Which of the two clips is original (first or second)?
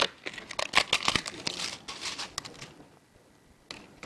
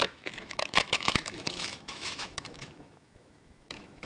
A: first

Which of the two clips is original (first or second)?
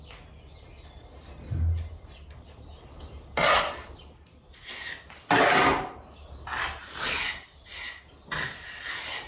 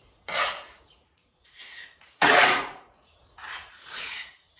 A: first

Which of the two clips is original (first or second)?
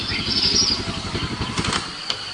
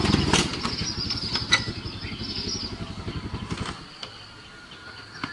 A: second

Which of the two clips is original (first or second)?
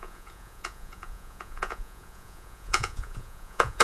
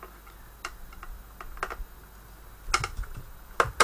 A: second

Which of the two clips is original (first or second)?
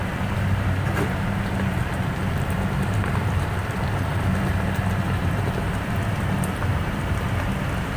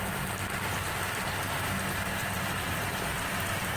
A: second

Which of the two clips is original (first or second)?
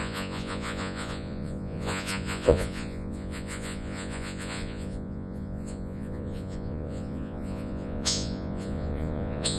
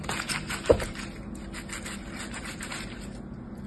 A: second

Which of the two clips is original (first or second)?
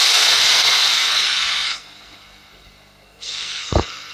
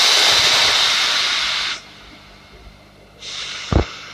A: second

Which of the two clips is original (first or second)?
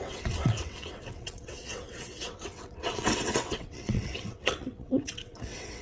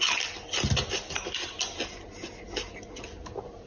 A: second